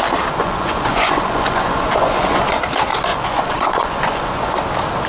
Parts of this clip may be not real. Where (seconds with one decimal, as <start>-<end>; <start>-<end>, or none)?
0.4-2.4; 3.1-4.5